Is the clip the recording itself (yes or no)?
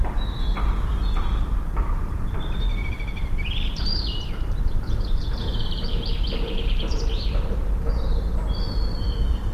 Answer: no